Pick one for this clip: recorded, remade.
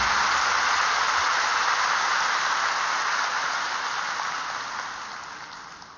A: recorded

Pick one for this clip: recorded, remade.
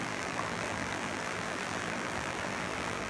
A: remade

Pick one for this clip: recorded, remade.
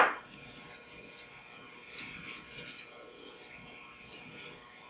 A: recorded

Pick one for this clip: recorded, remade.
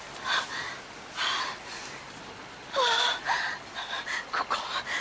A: recorded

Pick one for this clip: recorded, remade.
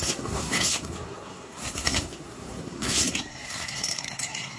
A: remade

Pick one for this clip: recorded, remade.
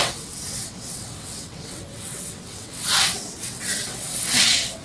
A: remade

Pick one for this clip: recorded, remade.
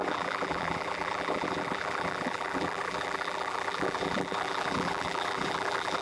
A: remade